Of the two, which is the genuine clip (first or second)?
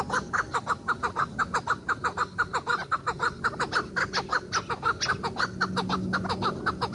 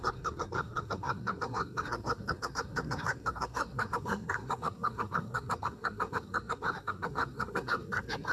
first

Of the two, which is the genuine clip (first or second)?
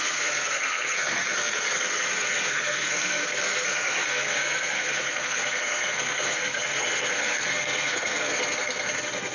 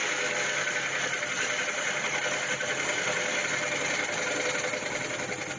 second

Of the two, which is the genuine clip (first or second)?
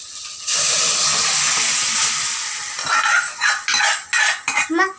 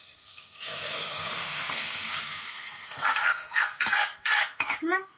first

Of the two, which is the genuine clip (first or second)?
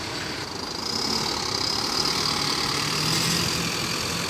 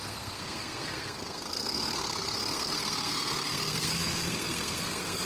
first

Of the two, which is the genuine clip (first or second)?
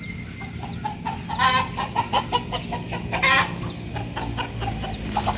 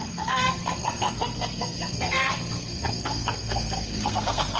first